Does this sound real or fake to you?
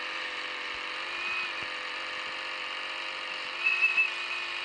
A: real